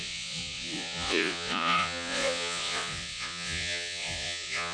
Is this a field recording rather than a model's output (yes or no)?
no